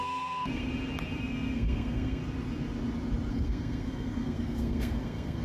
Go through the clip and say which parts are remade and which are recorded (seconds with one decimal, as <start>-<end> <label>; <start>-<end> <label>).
0.0-0.7 remade; 0.7-1.2 recorded; 1.2-2.2 remade; 2.2-3.3 recorded; 3.3-5.4 remade